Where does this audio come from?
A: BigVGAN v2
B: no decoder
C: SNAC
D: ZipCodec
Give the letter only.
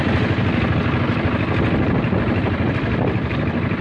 B